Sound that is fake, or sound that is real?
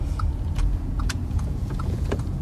fake